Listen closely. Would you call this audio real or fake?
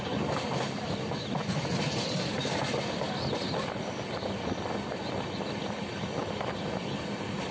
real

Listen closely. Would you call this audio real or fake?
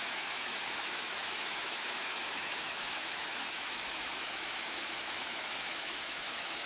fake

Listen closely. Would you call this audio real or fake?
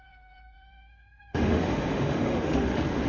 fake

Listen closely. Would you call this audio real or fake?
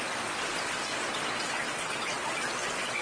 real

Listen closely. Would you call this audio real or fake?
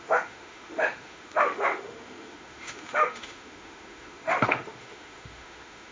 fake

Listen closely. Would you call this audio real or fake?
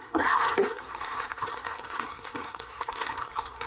fake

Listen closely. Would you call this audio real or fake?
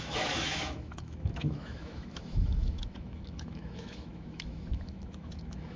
fake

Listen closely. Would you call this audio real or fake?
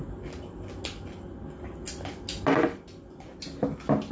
real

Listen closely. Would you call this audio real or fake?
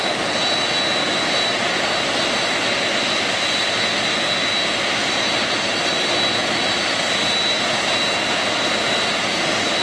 real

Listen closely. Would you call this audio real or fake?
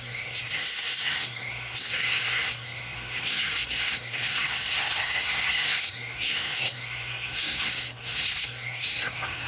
fake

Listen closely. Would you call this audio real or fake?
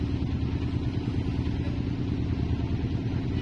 real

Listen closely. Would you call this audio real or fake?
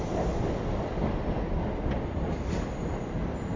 real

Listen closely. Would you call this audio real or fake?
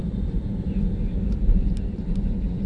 fake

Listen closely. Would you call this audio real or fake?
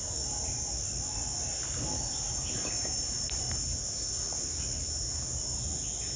real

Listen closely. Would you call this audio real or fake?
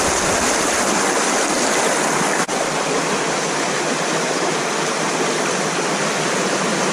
real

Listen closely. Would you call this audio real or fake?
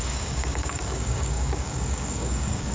fake